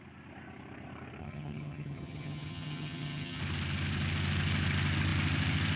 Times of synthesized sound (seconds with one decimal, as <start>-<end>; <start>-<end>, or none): 1.2-3.4